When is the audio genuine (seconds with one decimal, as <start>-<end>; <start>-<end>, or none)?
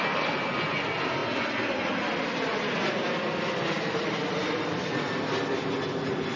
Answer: 0.0-6.4